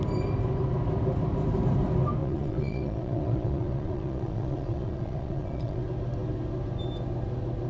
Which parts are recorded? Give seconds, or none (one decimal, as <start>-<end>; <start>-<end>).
0.0-2.2; 5.8-7.7